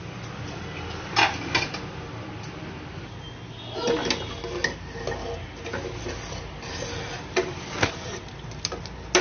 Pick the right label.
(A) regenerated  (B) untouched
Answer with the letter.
B